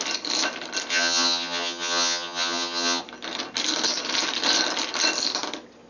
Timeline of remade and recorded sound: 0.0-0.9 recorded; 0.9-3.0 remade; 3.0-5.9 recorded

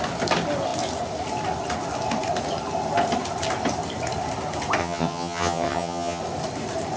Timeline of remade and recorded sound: 0.0-4.8 recorded; 4.8-6.2 remade; 6.2-7.0 recorded

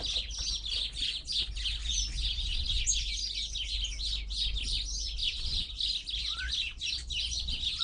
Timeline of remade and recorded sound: 0.0-1.8 recorded; 1.8-2.6 remade; 2.6-5.2 recorded; 5.2-5.7 remade; 5.7-7.8 recorded

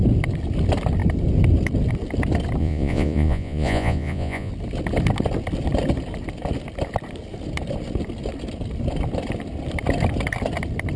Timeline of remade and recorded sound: 0.0-2.6 recorded; 2.6-4.5 remade; 4.5-11.0 recorded